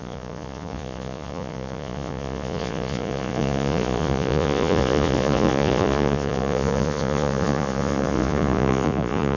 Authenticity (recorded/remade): remade